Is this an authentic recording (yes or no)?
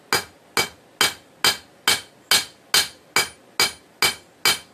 yes